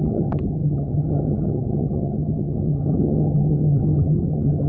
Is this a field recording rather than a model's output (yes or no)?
no